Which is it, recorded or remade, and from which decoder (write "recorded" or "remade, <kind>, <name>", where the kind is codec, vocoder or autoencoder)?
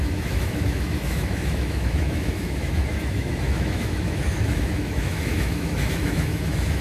remade, autoencoder, DAC-VAE